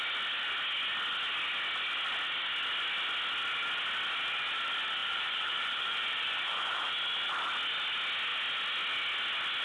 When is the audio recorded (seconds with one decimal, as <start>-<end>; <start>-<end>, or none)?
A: 0.0-5.0; 6.9-9.6